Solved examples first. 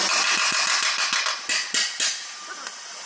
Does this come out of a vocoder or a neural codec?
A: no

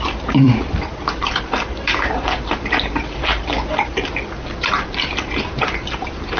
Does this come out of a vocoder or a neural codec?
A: yes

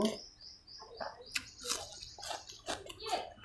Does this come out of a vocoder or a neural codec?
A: no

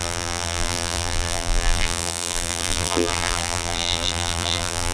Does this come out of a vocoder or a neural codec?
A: yes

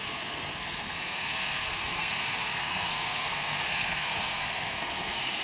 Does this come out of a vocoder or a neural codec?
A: yes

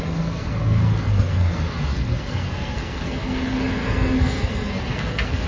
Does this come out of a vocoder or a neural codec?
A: yes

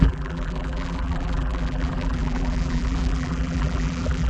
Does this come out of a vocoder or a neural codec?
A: yes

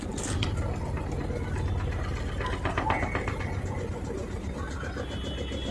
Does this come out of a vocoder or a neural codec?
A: no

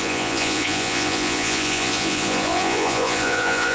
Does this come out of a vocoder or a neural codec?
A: yes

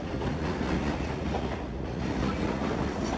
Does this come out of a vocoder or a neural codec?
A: yes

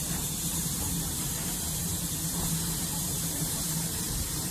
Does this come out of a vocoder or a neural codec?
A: yes